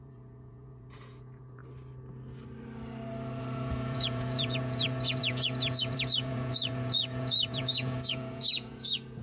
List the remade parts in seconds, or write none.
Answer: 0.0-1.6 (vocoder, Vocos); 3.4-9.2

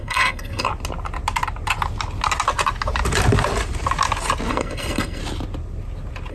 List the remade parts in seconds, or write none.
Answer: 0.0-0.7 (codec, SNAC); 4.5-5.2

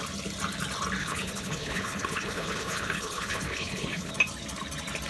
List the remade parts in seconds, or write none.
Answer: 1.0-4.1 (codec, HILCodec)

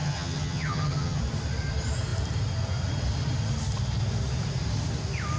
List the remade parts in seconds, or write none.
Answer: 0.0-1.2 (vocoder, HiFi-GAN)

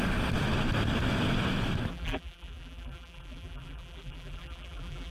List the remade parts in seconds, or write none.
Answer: 1.9-5.1 (vocoder, BigVGAN v2)